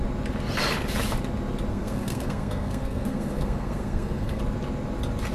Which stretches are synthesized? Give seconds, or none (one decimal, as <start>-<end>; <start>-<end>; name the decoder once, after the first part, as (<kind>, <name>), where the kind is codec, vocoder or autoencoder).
1.7-4.4 (codec, SNAC)